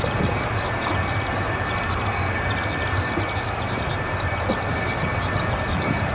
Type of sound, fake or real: fake